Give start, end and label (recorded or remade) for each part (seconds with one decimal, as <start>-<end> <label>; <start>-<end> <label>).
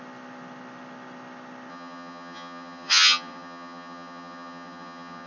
0.0-1.7 recorded; 1.7-5.3 remade